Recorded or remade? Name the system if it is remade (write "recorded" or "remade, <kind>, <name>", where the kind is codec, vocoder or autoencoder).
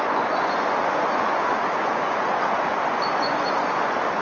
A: remade, vocoder, Vocos